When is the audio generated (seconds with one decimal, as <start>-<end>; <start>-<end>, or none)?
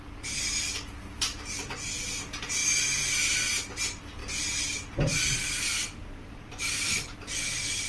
1.2-2.6; 3.7-4.2; 4.7-7.9